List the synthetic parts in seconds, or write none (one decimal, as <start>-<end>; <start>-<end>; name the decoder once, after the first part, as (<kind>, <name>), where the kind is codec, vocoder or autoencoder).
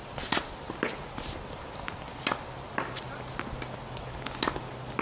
none